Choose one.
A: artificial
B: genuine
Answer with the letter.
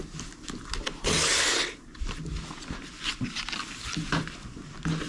B